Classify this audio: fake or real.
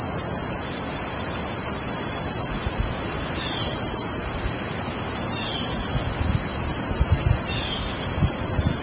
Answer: real